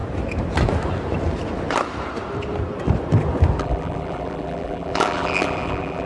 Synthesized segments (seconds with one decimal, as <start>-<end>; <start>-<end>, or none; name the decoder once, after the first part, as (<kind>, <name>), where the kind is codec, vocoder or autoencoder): 3.6-6.1 (vocoder, BigVGAN v2)